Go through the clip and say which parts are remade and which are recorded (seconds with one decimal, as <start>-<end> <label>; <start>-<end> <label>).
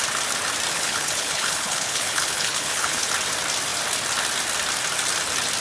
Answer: 0.0-0.7 recorded; 0.7-3.1 remade; 3.1-5.6 recorded